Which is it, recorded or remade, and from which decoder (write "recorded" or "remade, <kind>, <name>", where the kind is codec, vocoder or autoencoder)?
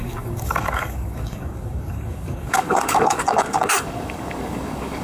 remade, codec, DAC